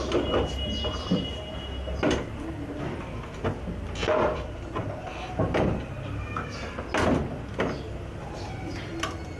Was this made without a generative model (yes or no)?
yes